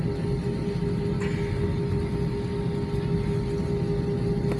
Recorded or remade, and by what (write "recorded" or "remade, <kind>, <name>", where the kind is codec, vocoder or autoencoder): recorded